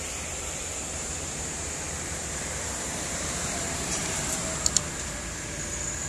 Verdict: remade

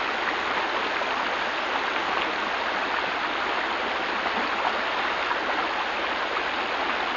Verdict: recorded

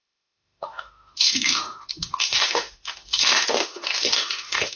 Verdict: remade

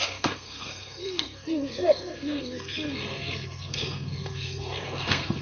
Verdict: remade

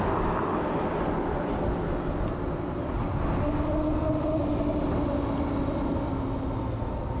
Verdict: recorded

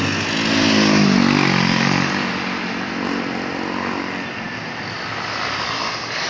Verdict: recorded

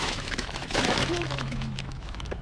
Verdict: remade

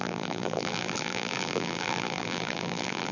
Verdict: remade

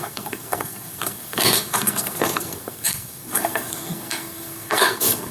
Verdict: remade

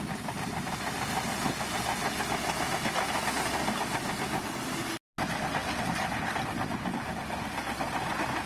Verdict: recorded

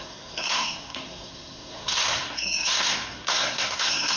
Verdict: remade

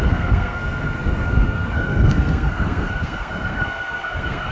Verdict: remade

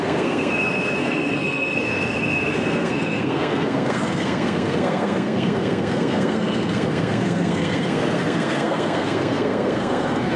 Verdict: remade